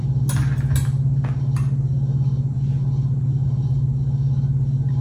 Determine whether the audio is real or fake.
real